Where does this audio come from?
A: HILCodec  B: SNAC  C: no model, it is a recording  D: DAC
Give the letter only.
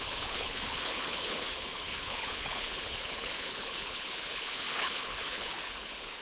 A